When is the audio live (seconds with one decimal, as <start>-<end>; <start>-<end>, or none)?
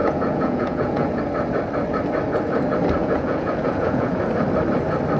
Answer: 1.2-3.0; 4.2-5.2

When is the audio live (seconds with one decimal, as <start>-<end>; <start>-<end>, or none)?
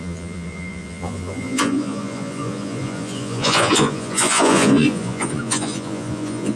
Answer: none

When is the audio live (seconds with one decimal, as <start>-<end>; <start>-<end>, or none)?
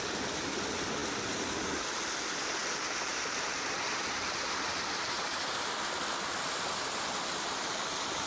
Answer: 0.0-8.3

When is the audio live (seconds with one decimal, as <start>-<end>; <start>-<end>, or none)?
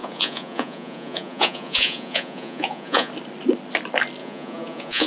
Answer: 3.1-4.2